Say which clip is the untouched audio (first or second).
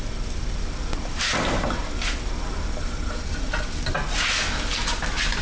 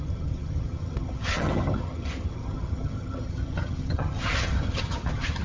first